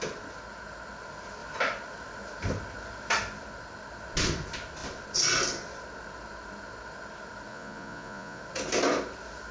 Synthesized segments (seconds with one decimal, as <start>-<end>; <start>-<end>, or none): 7.5-8.4